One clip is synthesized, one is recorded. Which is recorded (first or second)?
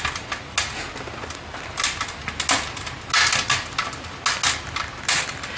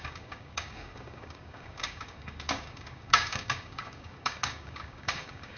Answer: first